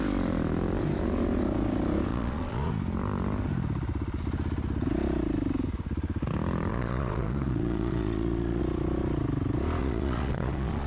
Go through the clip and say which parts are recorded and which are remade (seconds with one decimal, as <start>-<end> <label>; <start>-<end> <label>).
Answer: 0.0-2.1 recorded; 2.1-2.7 remade; 2.7-6.7 recorded; 6.7-8.6 remade; 8.6-9.8 recorded; 9.8-10.9 remade